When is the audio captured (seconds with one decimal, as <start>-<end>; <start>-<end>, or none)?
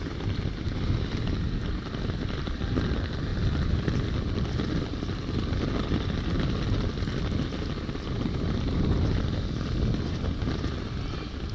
0.0-11.5